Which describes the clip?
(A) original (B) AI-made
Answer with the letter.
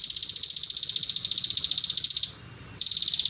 A